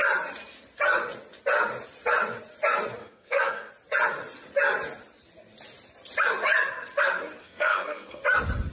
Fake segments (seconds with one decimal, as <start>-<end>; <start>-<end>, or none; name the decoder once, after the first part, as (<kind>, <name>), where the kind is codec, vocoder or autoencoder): 3.0-3.7 (codec, SNAC); 7.4-8.2